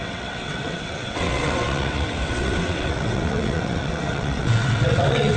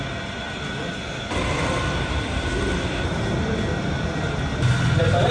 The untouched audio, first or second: second